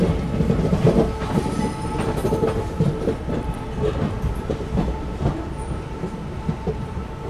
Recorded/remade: recorded